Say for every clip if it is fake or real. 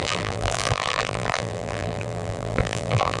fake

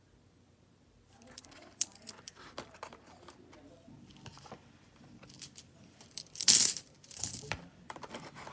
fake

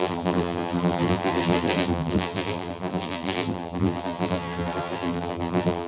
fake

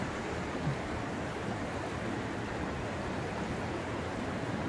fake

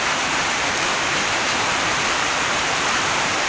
fake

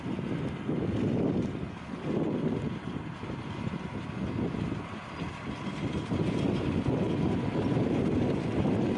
real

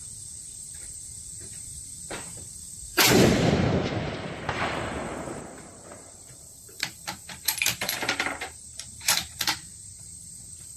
fake